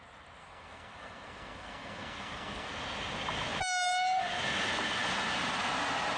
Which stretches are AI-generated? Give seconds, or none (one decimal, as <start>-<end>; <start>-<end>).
0.4-2.7